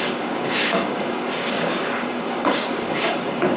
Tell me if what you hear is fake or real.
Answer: fake